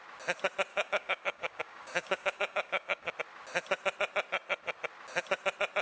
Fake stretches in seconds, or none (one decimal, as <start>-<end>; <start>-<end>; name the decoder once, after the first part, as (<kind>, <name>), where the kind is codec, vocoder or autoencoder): 0.7-3.1 (codec, DAC)